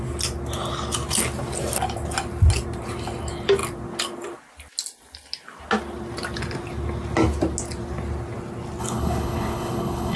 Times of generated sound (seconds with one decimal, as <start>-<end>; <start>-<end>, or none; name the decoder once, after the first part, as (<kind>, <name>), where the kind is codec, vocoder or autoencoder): 8.8-10.2 (codec, HILCodec)